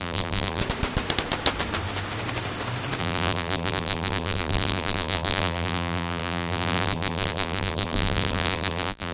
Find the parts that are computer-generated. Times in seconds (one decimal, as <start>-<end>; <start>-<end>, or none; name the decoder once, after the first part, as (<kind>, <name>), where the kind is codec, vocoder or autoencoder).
0.0-0.6 (vocoder, BigVGAN v2); 3.0-9.1